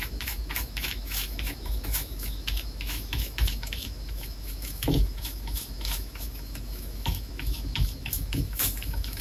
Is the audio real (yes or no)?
no